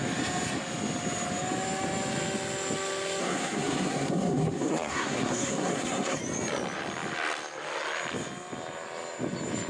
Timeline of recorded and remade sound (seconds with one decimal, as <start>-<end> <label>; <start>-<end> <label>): 0.0-3.2 recorded; 3.2-6.2 remade; 6.2-9.7 recorded